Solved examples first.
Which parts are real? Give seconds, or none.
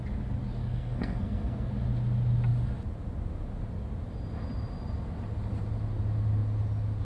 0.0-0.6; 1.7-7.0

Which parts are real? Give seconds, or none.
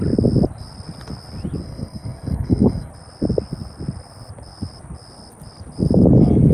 0.0-1.6; 2.9-6.5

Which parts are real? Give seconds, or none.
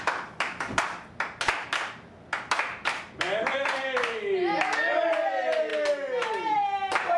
0.7-5.0; 5.7-7.2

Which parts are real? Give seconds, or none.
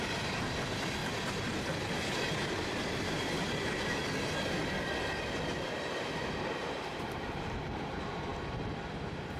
1.0-2.1; 4.0-5.9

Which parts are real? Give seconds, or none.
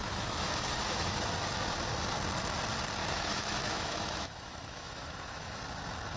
1.3-3.0; 5.6-6.2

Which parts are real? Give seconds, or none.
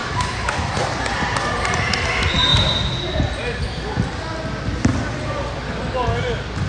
0.7-6.7